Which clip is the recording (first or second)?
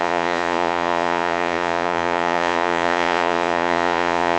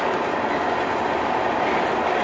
second